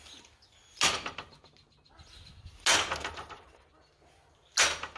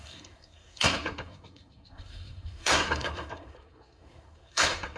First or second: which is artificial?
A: second